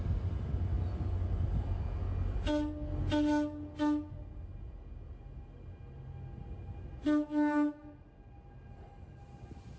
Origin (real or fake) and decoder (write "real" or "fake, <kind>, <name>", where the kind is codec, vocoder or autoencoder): real